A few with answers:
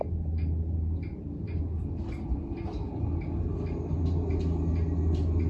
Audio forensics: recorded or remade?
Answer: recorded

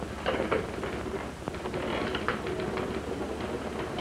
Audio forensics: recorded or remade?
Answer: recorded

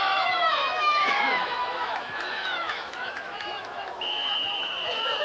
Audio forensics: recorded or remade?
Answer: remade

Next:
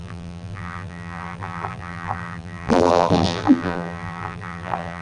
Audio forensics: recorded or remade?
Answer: remade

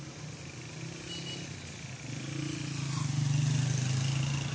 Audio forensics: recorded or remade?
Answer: recorded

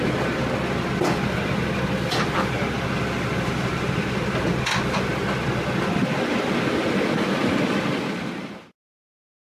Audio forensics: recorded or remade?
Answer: recorded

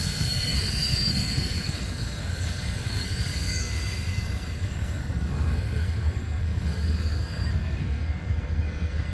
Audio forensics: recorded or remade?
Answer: remade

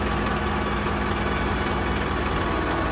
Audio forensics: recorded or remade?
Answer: recorded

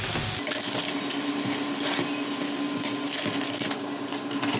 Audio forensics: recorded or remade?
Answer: recorded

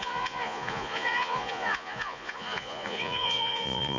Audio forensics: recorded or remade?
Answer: remade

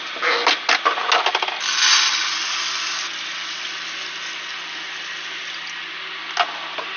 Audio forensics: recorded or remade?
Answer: recorded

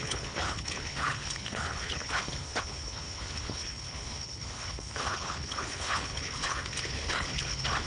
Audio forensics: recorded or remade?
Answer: remade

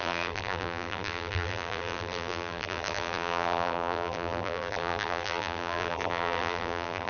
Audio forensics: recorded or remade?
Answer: remade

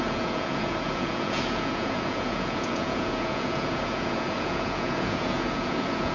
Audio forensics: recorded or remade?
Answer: remade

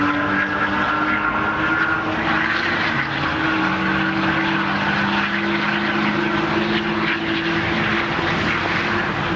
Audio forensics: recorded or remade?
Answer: recorded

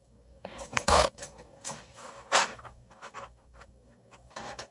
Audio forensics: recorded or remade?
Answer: remade